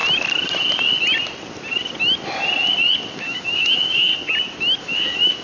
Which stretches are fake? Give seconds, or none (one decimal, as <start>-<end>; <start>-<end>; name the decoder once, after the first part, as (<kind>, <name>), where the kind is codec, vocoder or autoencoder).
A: 3.2-4.1 (autoencoder, DAC-VAE); 4.8-5.4